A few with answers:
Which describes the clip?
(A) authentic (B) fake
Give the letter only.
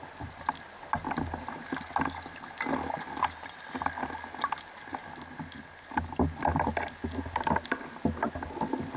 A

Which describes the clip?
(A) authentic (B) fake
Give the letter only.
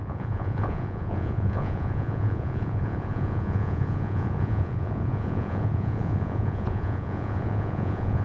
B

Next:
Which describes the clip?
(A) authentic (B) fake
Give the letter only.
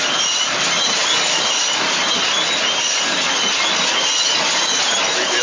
A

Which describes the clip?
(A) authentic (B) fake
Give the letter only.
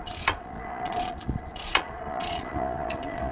B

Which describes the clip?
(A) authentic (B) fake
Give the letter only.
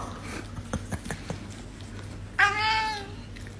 A